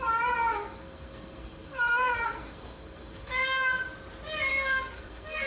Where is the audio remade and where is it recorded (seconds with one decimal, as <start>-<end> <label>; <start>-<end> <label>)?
0.0-0.5 recorded; 0.5-3.8 remade; 3.8-4.5 recorded; 4.5-5.5 remade